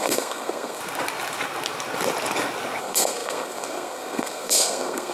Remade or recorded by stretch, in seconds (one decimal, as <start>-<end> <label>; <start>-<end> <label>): 0.0-0.8 remade; 0.8-2.8 recorded; 2.8-5.1 remade